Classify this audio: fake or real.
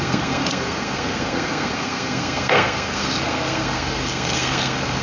fake